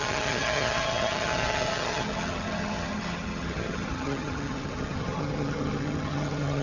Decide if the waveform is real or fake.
fake